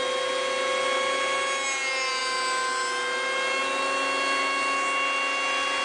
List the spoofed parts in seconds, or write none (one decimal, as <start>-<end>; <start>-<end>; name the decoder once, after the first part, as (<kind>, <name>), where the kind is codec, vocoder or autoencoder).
none